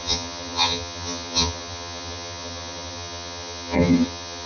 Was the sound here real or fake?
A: fake